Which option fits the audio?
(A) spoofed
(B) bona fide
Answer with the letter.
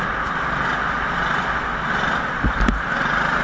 B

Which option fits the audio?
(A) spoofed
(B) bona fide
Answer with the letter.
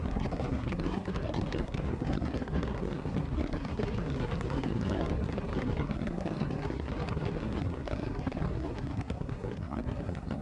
A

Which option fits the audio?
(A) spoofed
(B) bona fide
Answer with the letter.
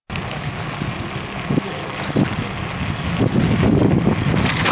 B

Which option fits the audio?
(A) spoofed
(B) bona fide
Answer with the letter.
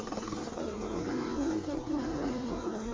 A